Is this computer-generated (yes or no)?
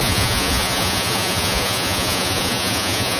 yes